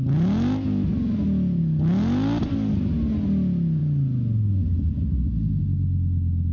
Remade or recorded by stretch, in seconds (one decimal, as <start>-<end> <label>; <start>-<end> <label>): 0.0-6.5 recorded